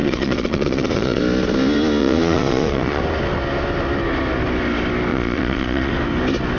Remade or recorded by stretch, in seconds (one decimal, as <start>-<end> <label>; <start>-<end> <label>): 0.0-1.2 remade; 1.2-2.0 recorded; 2.0-3.0 remade; 3.0-5.1 recorded; 5.1-5.9 remade; 5.9-6.6 recorded